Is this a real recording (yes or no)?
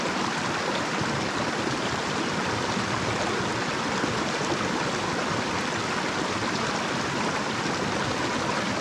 yes